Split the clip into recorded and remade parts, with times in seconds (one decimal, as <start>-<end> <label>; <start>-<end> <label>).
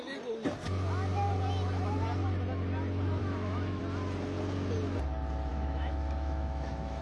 0.0-3.2 recorded; 3.2-3.8 remade; 3.8-5.5 recorded; 5.5-7.0 remade